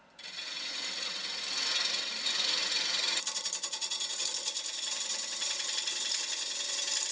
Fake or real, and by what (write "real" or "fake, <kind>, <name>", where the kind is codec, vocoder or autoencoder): fake, vocoder, BigVGAN v2